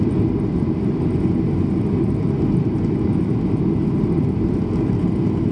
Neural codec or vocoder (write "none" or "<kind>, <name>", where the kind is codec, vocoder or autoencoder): none